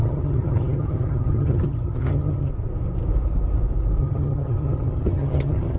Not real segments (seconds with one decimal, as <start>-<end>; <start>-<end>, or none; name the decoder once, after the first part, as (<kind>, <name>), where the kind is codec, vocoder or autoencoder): 0.0-2.5 (vocoder, HiFi-GAN); 4.0-5.8